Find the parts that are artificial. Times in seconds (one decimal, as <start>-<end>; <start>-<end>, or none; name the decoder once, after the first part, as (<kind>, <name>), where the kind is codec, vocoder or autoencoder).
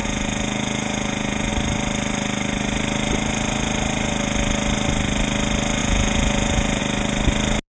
0.0-1.5 (vocoder, Vocos); 5.8-6.8